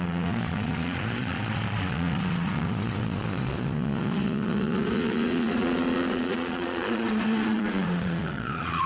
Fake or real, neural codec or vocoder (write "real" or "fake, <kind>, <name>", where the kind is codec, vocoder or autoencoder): fake, vocoder, Vocos